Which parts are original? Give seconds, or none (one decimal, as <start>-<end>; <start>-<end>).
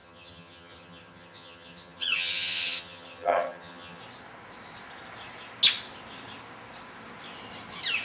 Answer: 4.0-8.0